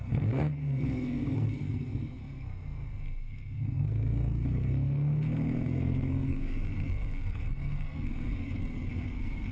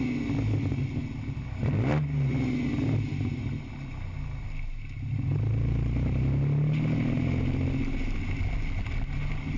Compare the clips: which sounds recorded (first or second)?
second